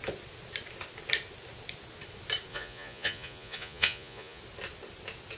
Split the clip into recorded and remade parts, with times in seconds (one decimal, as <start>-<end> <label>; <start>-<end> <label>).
0.0-2.5 recorded; 2.5-4.4 remade; 4.4-5.4 recorded